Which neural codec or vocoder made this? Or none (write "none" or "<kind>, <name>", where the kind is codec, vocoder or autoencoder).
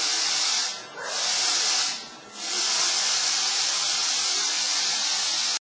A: none